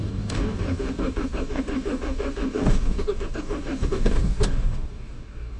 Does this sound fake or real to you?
fake